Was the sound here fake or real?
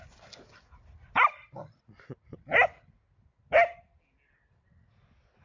real